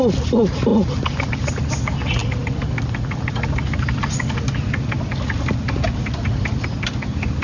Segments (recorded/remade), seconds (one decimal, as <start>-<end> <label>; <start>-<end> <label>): 0.0-7.4 recorded